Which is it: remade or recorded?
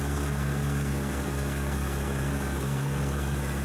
remade